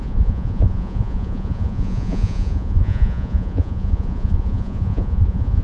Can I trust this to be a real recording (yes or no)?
no